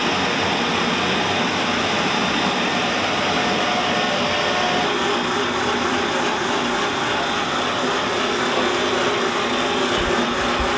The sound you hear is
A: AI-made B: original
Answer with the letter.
B